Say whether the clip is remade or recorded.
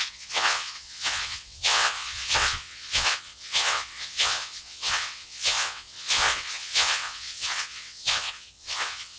remade